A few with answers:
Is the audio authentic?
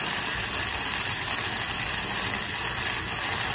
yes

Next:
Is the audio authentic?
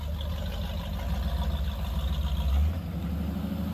yes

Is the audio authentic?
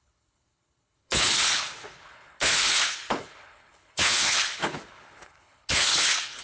no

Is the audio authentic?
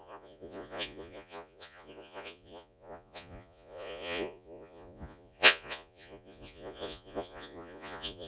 no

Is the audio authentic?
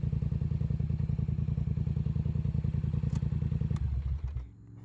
yes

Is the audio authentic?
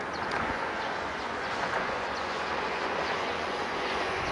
no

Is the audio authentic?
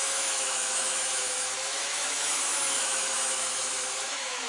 no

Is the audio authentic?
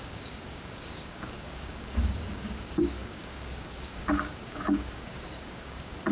no